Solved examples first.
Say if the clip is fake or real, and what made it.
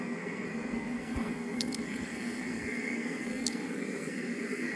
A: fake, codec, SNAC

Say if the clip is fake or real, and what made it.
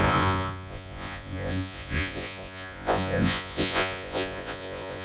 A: fake, vocoder, Vocos